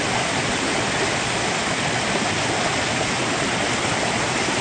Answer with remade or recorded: recorded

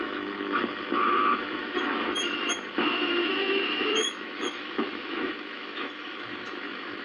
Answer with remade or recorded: remade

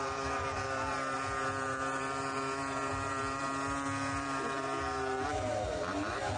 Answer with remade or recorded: remade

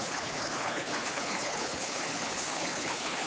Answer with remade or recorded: remade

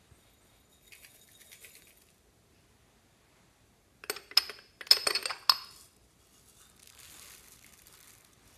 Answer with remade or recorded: recorded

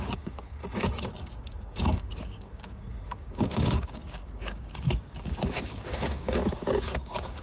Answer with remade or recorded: remade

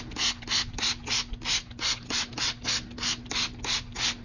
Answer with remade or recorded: recorded